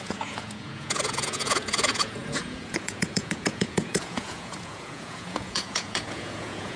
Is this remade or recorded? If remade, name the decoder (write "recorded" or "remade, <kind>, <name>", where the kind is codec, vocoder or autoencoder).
remade, vocoder, Vocos